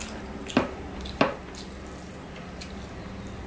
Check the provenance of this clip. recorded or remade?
recorded